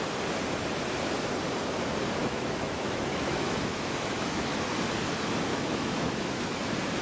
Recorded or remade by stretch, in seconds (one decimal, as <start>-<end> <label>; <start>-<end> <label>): 0.0-2.2 recorded; 2.2-4.5 remade; 4.5-5.5 recorded; 5.5-6.6 remade; 6.6-7.0 recorded